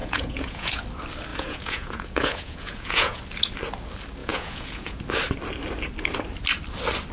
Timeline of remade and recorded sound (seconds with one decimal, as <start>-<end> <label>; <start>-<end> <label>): 0.0-0.8 remade; 0.8-1.3 recorded; 1.3-3.2 remade; 3.2-4.2 recorded; 4.2-5.0 remade; 5.0-7.1 recorded